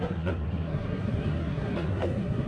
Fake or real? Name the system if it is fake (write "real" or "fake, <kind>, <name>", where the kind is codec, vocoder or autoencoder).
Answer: fake, codec, SNAC